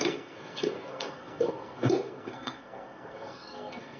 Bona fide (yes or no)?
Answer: no